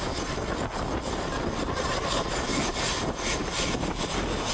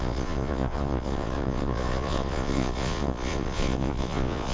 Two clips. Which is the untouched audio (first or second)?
first